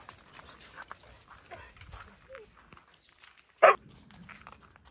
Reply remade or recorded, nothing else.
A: recorded